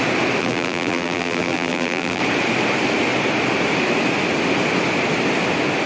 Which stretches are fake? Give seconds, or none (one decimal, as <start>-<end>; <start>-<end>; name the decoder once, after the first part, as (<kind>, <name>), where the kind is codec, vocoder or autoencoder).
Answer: 0.4-2.2 (vocoder, BigVGAN v2)